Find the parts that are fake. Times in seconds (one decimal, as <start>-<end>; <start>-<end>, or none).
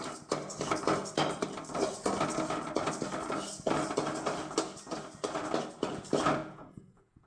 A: 6.4-7.3